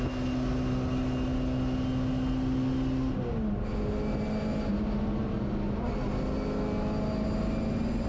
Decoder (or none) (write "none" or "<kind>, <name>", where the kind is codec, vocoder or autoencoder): none